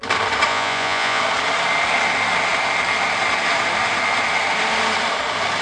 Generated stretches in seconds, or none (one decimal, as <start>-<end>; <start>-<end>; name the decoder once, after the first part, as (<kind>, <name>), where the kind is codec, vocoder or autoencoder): 0.5-1.2 (vocoder, Vocos)